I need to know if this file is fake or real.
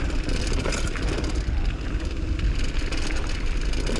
real